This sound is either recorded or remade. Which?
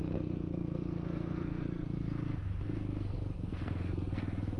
remade